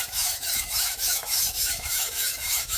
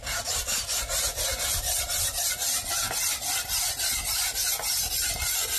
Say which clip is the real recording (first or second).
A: second